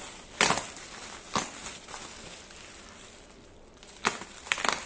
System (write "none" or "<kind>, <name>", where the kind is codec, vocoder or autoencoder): none